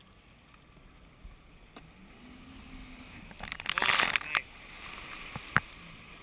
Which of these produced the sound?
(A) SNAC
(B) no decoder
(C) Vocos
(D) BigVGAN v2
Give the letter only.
B